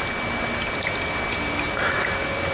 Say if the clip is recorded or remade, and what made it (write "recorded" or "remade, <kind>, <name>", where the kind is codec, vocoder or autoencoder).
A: recorded